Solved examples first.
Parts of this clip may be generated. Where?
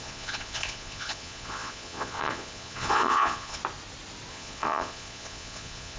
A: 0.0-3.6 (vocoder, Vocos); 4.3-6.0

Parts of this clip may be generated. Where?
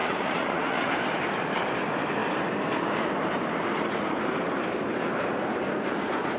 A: 0.0-0.9 (vocoder, Vocos)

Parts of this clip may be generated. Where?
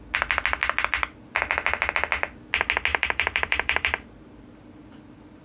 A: 2.9-4.5 (vocoder, BigVGAN v2)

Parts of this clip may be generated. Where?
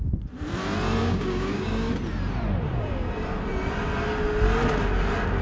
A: 1.0-1.9 (codec, DAC)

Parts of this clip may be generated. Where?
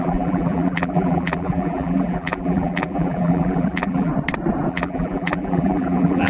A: 0.0-4.1 (vocoder, BigVGAN v2); 4.7-6.3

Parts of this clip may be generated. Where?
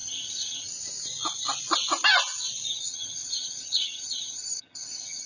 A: 0.0-0.7 (vocoder, HiFi-GAN); 2.7-5.3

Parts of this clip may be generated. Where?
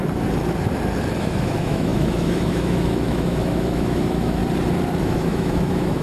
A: 1.2-4.4 (autoencoder, DAC-VAE); 5.0-6.0